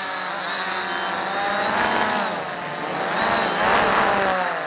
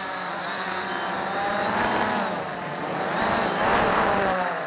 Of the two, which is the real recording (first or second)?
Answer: first